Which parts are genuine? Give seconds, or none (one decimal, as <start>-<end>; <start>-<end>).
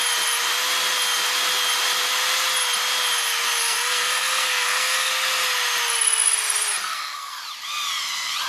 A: 0.0-3.6; 5.1-6.8; 7.4-8.5